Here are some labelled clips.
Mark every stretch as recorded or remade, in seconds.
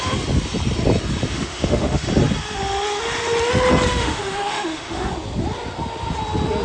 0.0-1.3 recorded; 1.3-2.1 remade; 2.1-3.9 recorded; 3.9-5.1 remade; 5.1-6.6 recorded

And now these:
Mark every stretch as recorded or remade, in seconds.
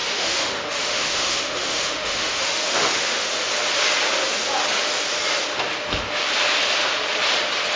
0.0-3.3 remade; 3.3-7.8 recorded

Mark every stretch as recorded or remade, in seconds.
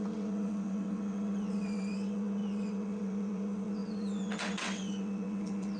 0.0-5.8 remade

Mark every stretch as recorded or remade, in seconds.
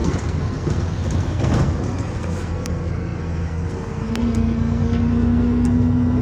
0.0-6.2 remade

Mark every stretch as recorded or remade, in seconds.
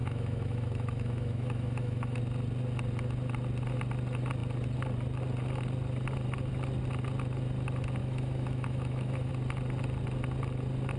0.0-2.2 remade; 2.2-8.0 recorded; 8.0-9.3 remade; 9.3-11.0 recorded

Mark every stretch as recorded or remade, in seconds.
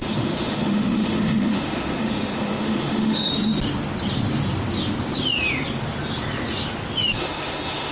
0.0-3.3 remade; 3.3-7.1 recorded; 7.1-7.9 remade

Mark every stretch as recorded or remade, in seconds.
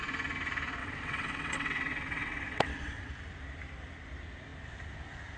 0.0-0.8 recorded; 0.8-3.1 remade; 3.1-5.4 recorded